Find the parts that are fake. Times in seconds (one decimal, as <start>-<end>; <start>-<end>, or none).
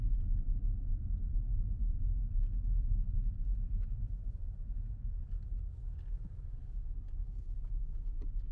1.3-5.1